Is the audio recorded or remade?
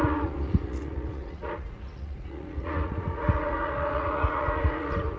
remade